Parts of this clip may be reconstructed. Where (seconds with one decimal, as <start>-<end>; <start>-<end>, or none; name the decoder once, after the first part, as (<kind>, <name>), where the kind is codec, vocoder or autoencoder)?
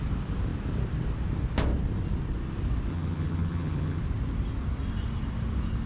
2.9-4.0 (vocoder, HiFi-GAN)